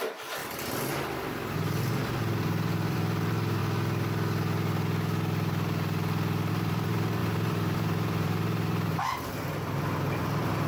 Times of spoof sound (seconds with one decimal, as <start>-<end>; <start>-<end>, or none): 0.0-0.4; 1.9-3.6; 6.5-10.7